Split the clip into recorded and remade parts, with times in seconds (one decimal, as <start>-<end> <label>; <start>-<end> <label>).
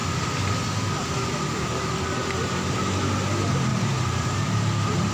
0.0-5.1 recorded